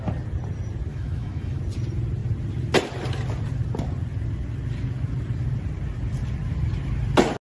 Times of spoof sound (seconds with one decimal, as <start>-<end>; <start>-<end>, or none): 0.9-1.6